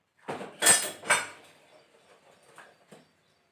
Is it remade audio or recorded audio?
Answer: recorded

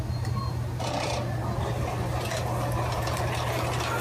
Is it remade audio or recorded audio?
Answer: recorded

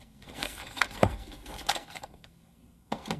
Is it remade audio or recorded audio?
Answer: remade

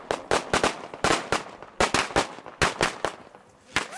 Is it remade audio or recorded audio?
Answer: recorded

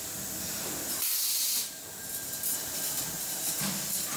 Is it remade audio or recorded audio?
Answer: recorded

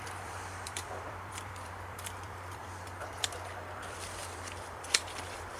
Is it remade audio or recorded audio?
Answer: remade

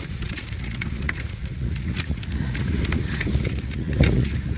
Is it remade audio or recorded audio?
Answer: remade